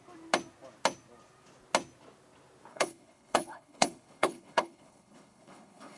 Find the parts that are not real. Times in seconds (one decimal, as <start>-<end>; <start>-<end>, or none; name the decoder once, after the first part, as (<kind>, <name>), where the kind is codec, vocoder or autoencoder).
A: 2.7-6.0 (codec, HILCodec)